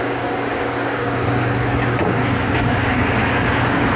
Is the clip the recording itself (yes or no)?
no